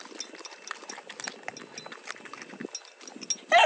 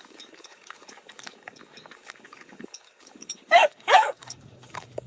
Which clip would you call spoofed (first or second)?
second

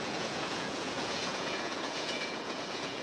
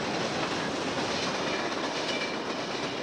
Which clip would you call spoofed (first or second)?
first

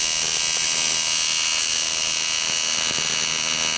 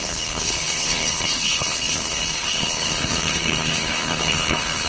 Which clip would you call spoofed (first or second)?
second